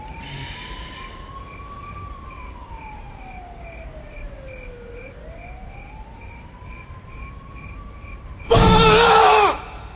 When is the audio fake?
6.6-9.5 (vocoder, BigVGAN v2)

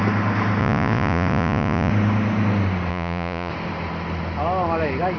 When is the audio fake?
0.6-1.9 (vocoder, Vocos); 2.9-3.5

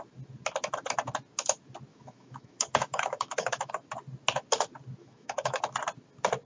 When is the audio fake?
1.9-3.7 (autoencoder, DAC-VAE); 5.0-5.6